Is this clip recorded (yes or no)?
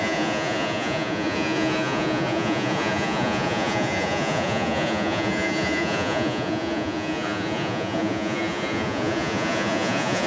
no